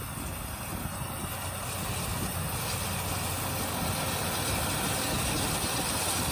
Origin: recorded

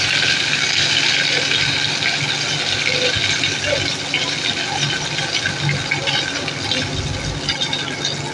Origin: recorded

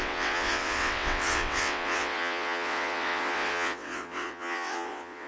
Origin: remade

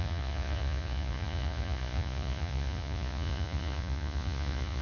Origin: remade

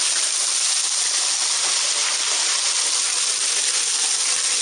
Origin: recorded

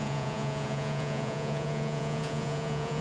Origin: remade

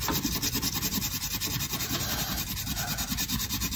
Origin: recorded